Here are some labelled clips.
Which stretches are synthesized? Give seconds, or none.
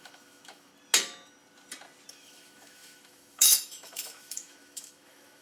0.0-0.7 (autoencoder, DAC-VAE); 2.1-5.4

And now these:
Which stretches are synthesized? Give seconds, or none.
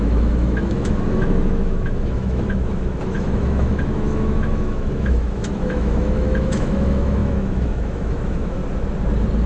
0.0-8.6 (autoencoder, DAC-VAE)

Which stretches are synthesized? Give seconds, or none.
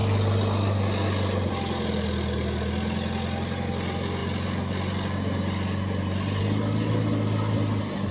none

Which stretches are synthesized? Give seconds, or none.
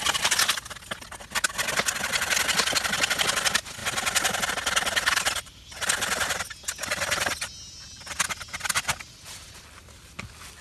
none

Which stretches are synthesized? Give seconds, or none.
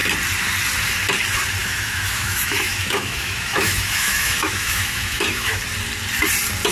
1.6-5.6 (autoencoder, DAC-VAE)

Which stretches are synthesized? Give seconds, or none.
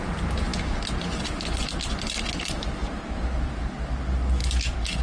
none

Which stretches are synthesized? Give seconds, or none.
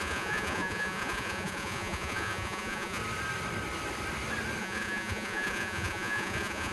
0.0-3.0 (vocoder, Vocos); 4.6-6.7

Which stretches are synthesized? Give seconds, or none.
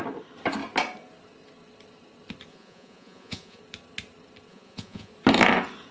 2.5-3.6 (vocoder, Vocos); 4.5-5.1